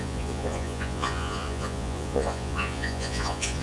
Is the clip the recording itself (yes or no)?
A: no